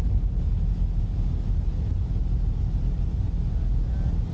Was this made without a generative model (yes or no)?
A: yes